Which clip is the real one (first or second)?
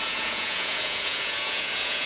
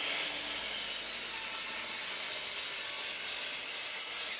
second